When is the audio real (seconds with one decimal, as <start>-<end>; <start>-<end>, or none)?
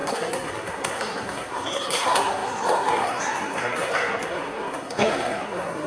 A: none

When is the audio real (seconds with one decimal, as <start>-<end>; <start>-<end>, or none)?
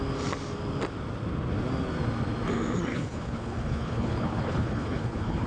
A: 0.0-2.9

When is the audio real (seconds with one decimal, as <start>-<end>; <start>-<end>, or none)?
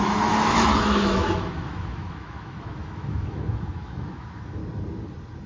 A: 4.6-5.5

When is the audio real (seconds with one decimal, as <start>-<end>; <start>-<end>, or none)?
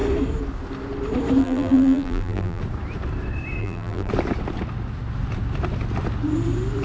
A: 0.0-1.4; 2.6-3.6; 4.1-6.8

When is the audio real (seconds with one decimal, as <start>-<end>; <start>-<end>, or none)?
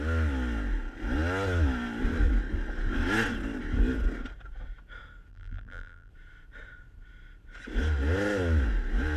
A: 0.0-5.3; 6.1-9.2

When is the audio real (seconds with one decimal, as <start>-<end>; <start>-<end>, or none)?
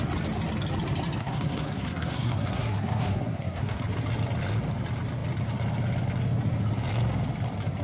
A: 0.0-1.2; 3.8-7.8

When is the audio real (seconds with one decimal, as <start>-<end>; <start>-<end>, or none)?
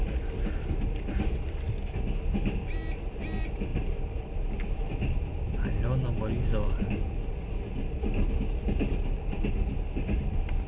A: 0.0-3.7; 7.2-10.7